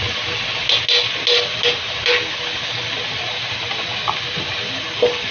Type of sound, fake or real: real